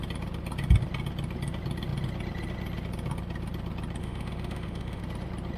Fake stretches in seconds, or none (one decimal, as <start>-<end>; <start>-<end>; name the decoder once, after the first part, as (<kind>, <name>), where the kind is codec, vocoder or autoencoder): 4.0-5.0 (autoencoder, DAC-VAE)

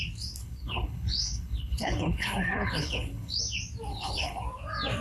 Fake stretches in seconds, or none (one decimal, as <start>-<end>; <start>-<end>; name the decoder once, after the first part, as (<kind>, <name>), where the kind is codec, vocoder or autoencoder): 0.4-3.4 (codec, HILCodec); 3.9-4.4